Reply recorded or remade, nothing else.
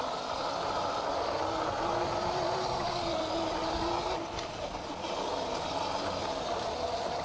recorded